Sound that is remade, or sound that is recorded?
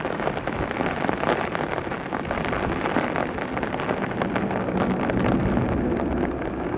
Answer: recorded